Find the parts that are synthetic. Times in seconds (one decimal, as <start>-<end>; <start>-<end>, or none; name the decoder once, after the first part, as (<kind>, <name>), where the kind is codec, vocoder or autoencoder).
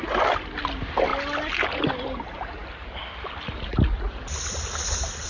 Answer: none